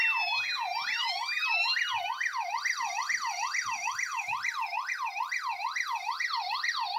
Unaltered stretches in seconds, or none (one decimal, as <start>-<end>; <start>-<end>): 0.0-4.1; 4.9-7.0

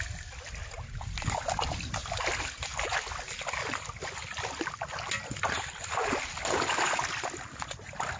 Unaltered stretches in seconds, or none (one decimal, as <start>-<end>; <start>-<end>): 0.0-8.2

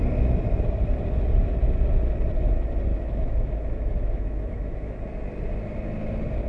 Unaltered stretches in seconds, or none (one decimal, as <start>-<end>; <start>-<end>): 0.0-2.9; 5.0-6.5

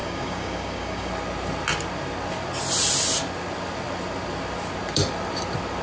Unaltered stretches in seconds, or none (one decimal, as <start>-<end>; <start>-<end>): 1.1-5.8

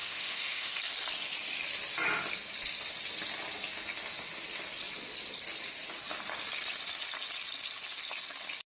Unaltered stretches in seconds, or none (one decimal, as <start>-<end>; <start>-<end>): 0.8-8.7

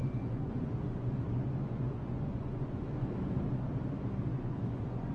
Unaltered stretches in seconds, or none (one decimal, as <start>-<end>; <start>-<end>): 3.1-4.3

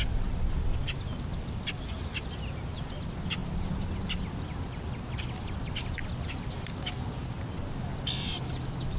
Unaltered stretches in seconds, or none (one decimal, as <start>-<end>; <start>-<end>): 0.0-9.0